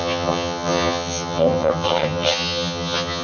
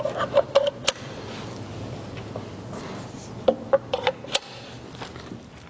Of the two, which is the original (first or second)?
second